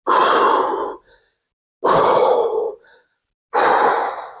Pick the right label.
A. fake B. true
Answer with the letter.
B